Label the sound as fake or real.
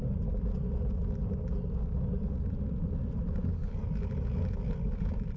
real